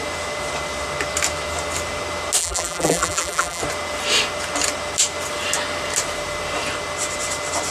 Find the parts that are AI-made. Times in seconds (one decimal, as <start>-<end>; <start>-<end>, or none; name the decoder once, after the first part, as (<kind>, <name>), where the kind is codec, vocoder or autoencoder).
2.4-3.6 (vocoder, BigVGAN v2)